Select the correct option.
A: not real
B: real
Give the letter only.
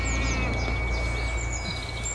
B